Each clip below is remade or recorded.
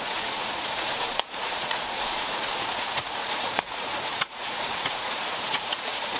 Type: remade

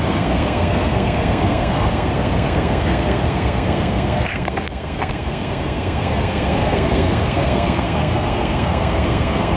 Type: remade